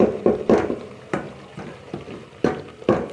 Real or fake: fake